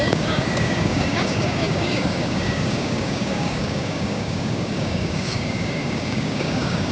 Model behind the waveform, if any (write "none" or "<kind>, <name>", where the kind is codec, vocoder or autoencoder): codec, DAC